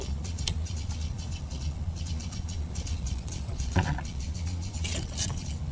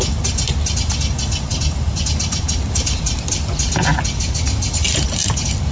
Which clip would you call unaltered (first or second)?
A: second